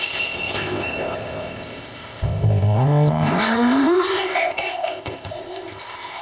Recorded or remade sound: remade